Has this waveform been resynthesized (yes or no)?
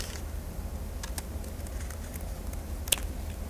no